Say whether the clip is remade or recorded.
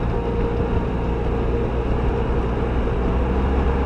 recorded